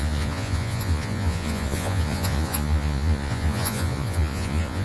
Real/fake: fake